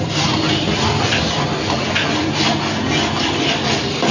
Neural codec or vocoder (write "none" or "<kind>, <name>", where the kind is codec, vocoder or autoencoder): none